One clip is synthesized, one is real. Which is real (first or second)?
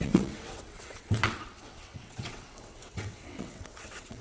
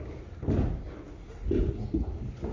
second